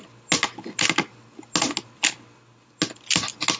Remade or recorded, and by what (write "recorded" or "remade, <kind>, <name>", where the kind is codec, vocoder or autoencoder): recorded